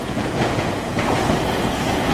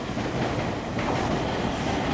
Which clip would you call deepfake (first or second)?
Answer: first